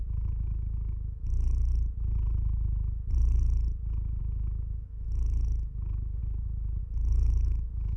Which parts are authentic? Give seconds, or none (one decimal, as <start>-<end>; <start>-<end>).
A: 1.7-4.2; 6.2-6.8